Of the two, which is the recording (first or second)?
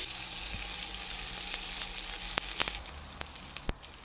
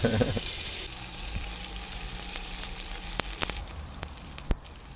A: first